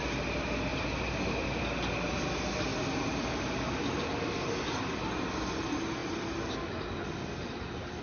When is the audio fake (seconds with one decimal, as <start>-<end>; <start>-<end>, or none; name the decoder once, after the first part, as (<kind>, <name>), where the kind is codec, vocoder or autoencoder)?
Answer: 0.7-1.6 (vocoder, BigVGAN v2); 2.7-4.5